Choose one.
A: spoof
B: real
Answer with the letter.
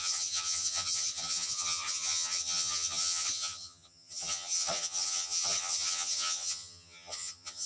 A